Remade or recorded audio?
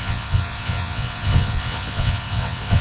remade